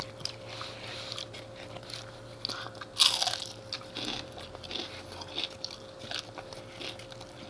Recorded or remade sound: recorded